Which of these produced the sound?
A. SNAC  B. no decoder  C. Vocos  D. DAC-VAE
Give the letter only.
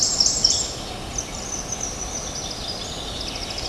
B